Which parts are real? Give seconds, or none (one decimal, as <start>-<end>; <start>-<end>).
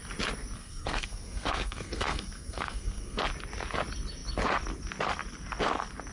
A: 0.0-0.6; 3.2-6.1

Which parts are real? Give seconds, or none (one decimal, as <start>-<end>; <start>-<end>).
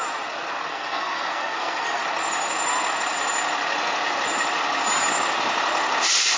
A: 0.0-0.7; 2.0-6.4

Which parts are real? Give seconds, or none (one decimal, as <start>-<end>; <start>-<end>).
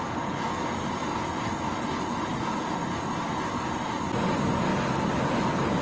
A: 0.0-5.8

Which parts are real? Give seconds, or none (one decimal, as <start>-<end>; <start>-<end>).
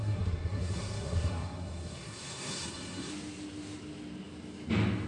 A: 3.1-5.1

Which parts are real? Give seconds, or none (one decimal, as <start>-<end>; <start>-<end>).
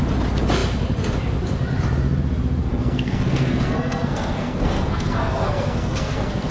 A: 0.0-2.6